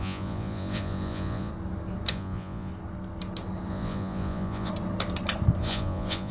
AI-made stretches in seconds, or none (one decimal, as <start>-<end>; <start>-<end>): 0.0-1.5; 2.1-2.7; 3.7-4.7; 5.6-6.3